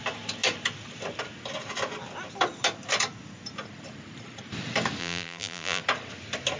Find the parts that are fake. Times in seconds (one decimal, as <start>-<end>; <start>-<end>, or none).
5.0-5.8

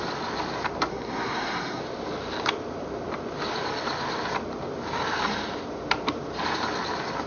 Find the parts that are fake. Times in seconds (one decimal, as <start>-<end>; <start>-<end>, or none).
0.9-1.8

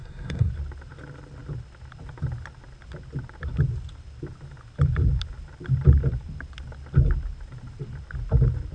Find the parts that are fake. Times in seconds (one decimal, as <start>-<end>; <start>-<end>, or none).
0.0-0.5